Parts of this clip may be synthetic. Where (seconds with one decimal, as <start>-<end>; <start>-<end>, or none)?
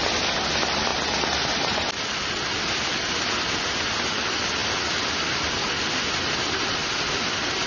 none